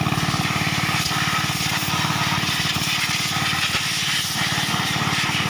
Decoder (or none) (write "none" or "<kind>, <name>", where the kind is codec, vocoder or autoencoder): none